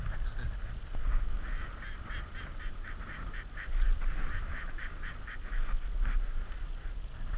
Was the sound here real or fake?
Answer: real